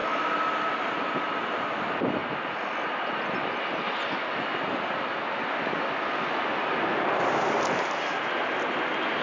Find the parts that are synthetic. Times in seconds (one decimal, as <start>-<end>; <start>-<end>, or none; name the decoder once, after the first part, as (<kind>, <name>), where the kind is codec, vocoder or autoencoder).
none